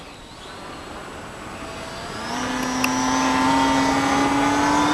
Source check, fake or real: real